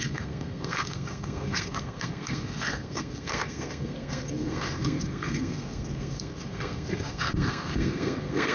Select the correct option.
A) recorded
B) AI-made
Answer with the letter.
B